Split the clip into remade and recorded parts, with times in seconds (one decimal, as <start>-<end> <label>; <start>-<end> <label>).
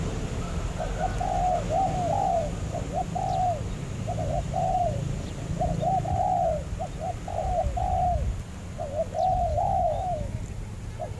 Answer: 0.0-9.5 recorded; 9.5-10.4 remade; 10.4-11.2 recorded